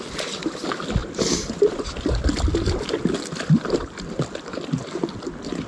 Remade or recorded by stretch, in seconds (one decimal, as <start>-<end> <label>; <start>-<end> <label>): 0.0-5.7 recorded